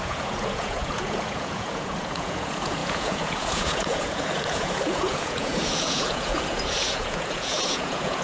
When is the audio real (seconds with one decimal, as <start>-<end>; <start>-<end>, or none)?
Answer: none